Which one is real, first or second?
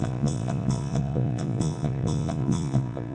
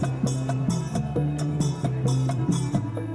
second